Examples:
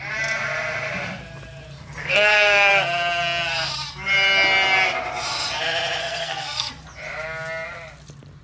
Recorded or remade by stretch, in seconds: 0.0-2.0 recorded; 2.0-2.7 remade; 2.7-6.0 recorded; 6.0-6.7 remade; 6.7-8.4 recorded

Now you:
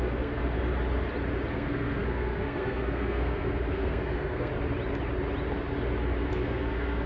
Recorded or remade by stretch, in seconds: 0.0-0.4 remade; 0.4-1.5 recorded; 1.5-4.5 remade; 4.5-6.3 recorded; 6.3-7.1 remade

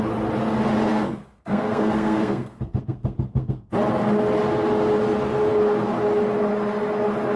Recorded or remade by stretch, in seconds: 0.0-0.9 recorded; 0.9-3.7 remade; 3.7-7.4 recorded

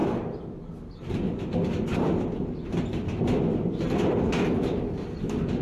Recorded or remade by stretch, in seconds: 0.0-5.6 recorded

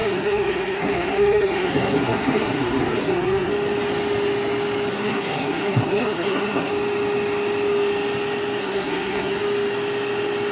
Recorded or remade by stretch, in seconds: 0.0-3.5 remade; 3.5-4.9 recorded; 4.9-6.7 remade; 6.7-8.6 recorded; 8.6-9.4 remade; 9.4-10.5 recorded

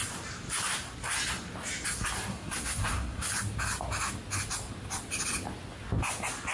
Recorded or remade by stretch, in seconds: 0.0-2.3 recorded; 2.3-3.3 remade; 3.3-6.5 recorded

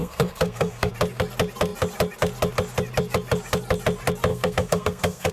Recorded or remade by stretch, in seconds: 0.0-0.9 remade; 0.9-4.3 recorded; 4.3-5.3 remade